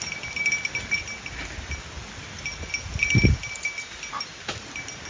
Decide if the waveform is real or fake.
real